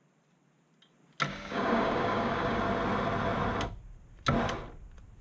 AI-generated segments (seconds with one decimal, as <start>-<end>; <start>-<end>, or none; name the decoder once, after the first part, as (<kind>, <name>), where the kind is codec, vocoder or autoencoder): 1.3-2.6 (codec, DAC)